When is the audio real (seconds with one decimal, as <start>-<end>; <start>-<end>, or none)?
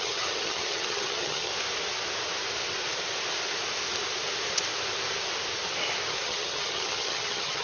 1.5-6.1